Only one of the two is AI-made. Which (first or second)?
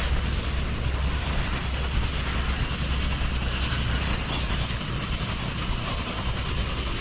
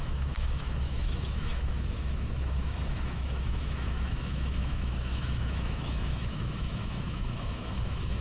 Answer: second